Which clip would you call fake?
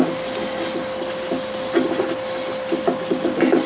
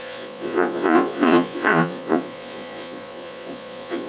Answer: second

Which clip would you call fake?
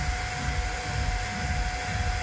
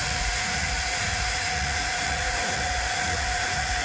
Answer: second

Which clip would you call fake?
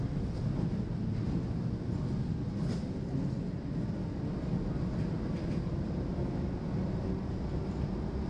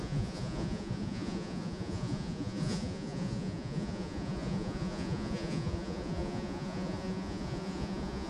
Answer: second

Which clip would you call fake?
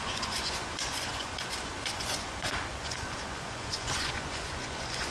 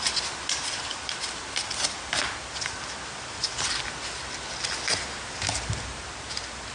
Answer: first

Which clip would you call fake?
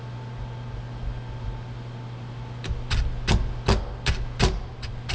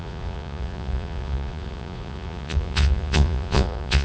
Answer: second